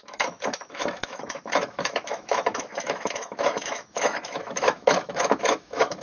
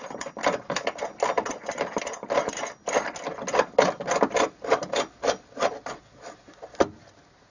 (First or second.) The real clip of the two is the second